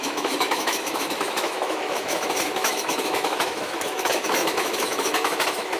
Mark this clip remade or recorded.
remade